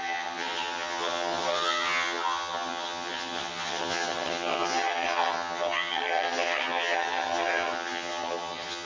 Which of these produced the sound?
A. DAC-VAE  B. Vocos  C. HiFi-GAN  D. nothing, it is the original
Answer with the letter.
C